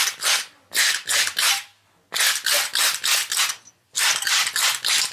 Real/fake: real